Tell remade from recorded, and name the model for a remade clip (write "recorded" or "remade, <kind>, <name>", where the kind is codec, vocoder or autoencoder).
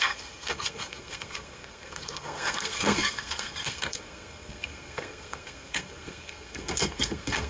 remade, codec, SNAC